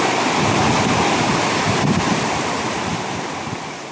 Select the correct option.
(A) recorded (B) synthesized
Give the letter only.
A